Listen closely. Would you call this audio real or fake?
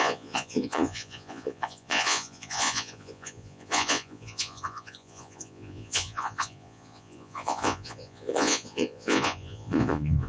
fake